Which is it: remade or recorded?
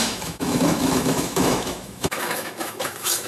remade